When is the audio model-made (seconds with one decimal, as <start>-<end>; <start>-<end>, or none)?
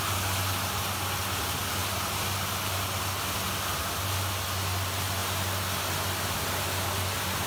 none